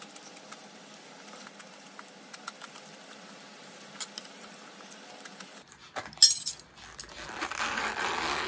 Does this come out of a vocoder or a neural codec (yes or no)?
no